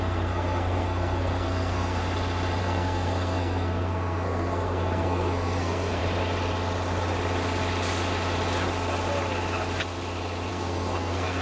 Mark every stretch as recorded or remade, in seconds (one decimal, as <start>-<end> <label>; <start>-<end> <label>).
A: 0.0-2.0 remade; 2.0-2.6 recorded; 2.6-6.0 remade; 6.0-10.5 recorded; 10.5-11.4 remade